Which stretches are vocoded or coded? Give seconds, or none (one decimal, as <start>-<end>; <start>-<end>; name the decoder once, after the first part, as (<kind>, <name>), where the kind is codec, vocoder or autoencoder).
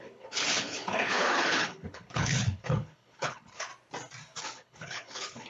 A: 0.0-3.7 (codec, HILCodec); 4.4-5.5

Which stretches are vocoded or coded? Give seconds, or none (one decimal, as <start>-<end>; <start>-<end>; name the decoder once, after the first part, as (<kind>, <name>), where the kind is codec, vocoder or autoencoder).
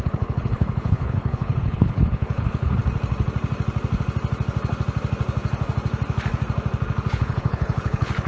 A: 0.0-2.8 (codec, HILCodec); 7.1-8.3